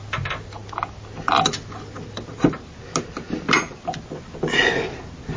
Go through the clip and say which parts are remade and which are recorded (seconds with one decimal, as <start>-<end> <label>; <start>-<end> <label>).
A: 0.0-5.4 recorded